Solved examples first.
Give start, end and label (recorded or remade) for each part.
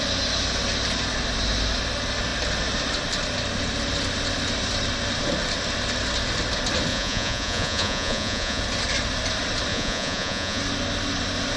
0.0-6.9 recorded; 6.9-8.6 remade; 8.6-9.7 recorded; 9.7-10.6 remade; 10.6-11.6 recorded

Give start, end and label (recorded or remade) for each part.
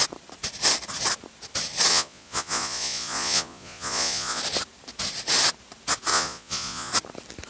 0.0-1.9 recorded; 1.9-4.4 remade; 4.4-6.1 recorded; 6.1-6.9 remade; 6.9-7.5 recorded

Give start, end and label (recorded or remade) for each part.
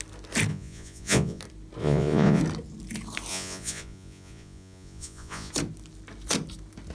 0.0-0.5 recorded; 0.5-1.4 remade; 1.4-1.8 recorded; 1.8-2.4 remade; 2.4-3.3 recorded; 3.3-5.5 remade; 5.5-6.9 recorded